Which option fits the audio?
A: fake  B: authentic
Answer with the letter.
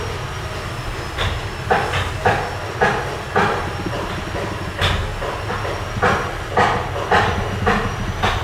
B